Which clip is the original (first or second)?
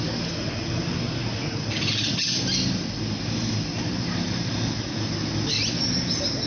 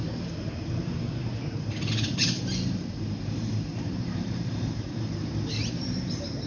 first